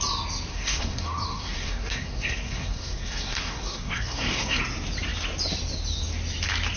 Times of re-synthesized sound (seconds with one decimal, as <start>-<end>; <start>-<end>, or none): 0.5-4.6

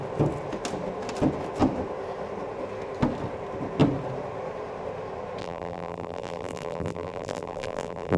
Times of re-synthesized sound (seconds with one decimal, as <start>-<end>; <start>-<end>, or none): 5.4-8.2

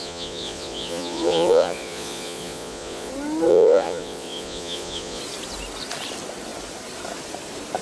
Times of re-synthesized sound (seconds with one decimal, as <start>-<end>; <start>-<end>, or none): 0.0-3.1; 3.5-5.2

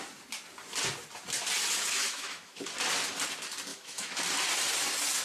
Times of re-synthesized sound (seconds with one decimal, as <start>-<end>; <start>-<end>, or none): 2.0-2.6; 3.7-4.2

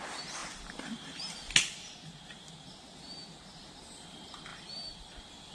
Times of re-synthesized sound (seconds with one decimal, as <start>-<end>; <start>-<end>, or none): 0.0-0.4; 3.7-5.5

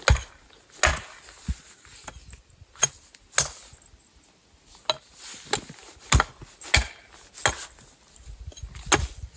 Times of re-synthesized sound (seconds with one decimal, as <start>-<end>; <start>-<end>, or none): none

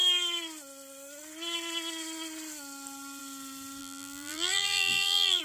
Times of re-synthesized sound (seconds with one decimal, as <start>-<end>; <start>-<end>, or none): 3.8-5.4